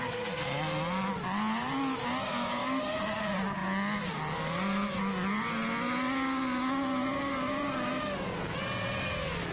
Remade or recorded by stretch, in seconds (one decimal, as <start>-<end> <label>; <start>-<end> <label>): 0.0-9.5 recorded